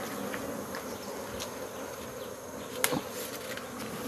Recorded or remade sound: recorded